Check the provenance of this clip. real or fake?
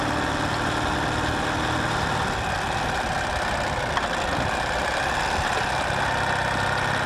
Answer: real